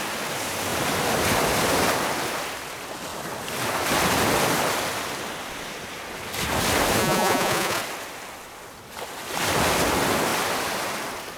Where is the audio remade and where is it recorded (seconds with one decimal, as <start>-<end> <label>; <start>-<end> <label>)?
0.0-7.0 recorded; 7.0-7.8 remade; 7.8-11.4 recorded

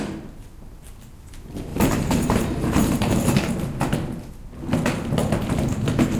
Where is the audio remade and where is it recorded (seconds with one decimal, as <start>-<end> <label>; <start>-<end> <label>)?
0.0-1.7 recorded; 1.7-3.5 remade; 3.5-6.2 recorded